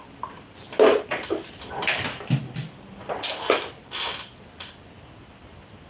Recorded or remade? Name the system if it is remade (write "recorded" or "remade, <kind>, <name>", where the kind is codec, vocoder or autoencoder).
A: recorded